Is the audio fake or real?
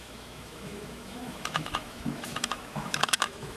fake